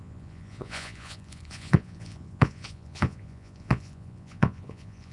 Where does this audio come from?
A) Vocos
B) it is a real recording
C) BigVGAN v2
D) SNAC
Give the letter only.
A